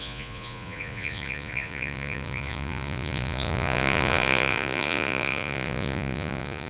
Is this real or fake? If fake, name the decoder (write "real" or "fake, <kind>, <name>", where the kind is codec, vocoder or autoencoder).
fake, vocoder, Vocos